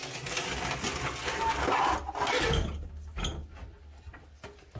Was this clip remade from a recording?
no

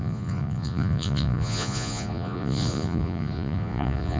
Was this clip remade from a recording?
yes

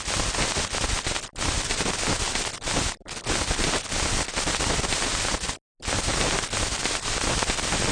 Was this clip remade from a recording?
no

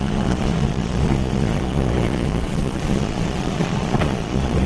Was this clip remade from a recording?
yes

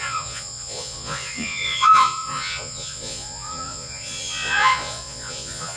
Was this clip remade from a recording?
yes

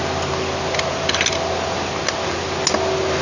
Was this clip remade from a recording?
no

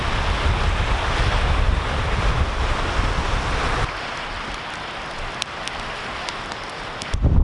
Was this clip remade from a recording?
no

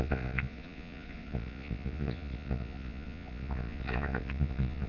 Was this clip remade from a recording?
yes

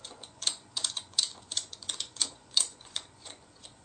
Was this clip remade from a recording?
yes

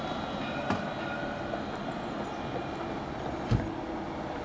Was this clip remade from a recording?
no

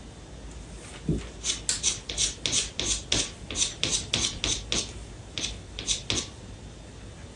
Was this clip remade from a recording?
no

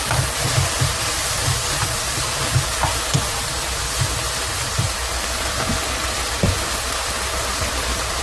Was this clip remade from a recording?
no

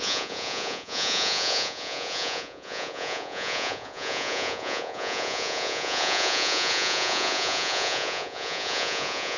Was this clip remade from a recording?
yes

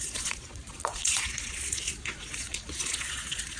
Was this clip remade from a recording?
yes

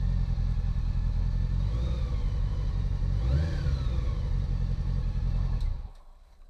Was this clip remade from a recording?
no